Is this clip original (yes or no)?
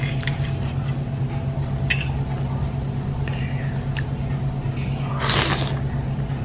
yes